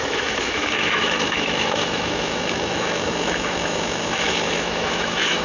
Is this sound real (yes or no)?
no